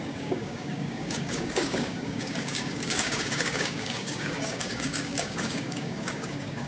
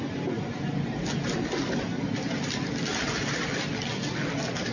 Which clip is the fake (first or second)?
first